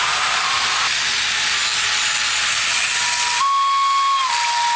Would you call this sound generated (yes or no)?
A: no